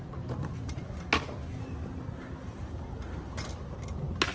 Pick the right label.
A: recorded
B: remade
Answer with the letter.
A